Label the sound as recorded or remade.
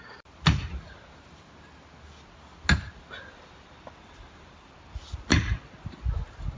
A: recorded